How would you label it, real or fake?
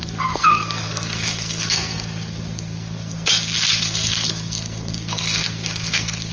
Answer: fake